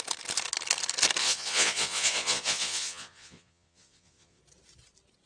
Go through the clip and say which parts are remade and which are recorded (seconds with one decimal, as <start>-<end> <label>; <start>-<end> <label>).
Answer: 0.0-1.2 recorded; 1.2-4.4 remade; 4.4-5.3 recorded